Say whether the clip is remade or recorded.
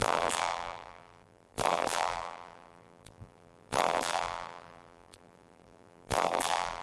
remade